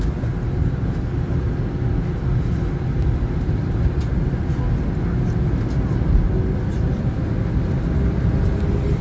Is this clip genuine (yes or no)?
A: yes